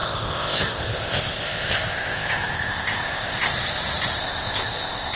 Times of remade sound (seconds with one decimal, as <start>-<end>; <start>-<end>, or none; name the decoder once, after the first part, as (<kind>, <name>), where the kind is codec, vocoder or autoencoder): 0.0-3.5 (codec, ZipCodec); 4.2-5.2

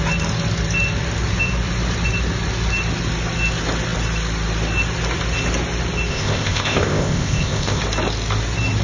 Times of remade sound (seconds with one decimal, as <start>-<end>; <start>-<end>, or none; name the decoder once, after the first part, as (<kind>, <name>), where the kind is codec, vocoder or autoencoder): 6.1-7.8 (codec, ZipCodec)

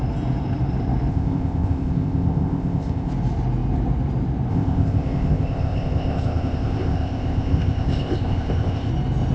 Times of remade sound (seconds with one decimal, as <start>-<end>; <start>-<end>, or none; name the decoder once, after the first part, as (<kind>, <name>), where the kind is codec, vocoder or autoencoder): 1.1-3.1 (codec, ZipCodec); 4.5-8.9